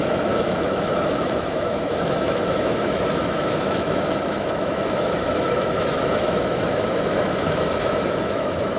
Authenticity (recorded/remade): remade